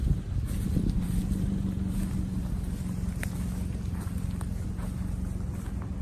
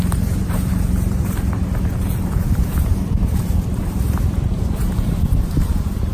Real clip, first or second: first